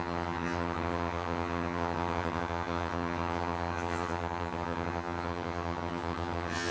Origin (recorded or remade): remade